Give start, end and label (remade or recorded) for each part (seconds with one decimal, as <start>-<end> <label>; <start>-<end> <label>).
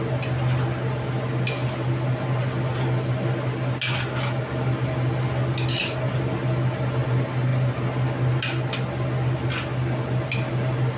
0.0-11.0 recorded